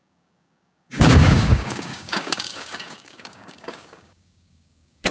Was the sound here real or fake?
fake